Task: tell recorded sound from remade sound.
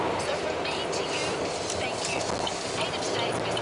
recorded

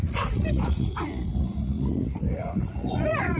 remade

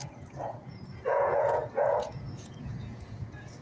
remade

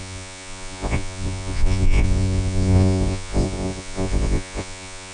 remade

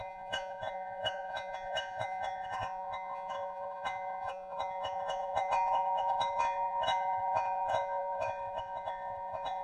remade